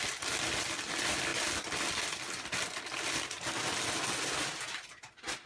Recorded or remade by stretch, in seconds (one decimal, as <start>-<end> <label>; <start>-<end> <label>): 0.0-5.5 recorded